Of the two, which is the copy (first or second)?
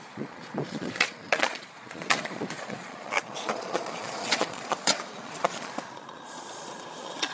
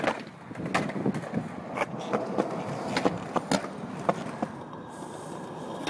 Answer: first